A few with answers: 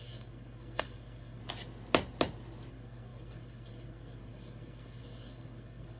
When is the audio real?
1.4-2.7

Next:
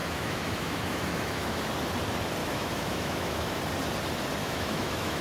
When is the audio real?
1.7-2.4; 3.6-4.4

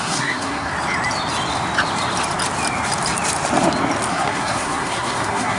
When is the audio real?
0.7-4.1

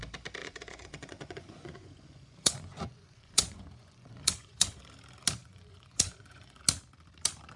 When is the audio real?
0.0-0.4; 4.8-5.4; 6.6-7.6